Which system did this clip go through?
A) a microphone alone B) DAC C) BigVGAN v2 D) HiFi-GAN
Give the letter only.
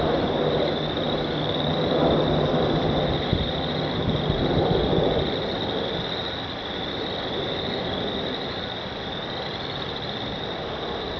A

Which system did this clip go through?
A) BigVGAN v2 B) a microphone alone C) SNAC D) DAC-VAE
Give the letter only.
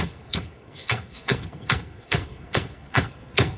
C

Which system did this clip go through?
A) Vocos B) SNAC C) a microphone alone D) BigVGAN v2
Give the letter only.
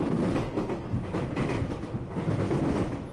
C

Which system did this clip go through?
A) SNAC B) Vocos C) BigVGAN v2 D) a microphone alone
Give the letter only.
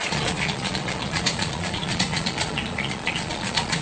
B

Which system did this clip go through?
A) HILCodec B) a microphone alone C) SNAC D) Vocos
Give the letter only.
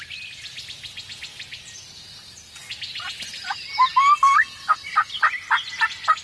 B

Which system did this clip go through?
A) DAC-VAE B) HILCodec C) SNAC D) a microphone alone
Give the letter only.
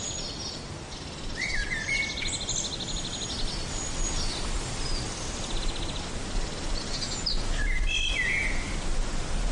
D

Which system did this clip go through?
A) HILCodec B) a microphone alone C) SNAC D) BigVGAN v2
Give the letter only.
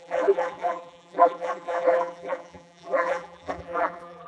D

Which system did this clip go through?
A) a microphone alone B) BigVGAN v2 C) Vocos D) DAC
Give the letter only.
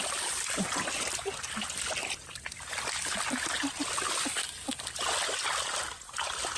A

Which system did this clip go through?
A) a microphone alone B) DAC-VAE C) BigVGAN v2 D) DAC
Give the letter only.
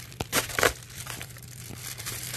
C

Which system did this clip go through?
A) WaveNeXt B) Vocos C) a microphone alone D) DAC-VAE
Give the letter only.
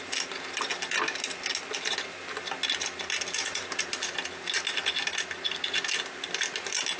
C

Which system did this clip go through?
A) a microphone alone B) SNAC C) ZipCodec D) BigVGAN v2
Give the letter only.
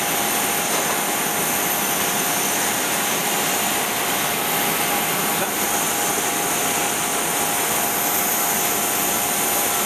A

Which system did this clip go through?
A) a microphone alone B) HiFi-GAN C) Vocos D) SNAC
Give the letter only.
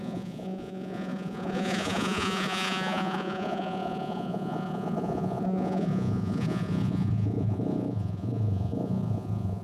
C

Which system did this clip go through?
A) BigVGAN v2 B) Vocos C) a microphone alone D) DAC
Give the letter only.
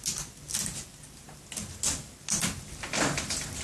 C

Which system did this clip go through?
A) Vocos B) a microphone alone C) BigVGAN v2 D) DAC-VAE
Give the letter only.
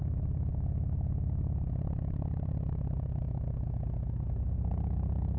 B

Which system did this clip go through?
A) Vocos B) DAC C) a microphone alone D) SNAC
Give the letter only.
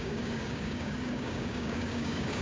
B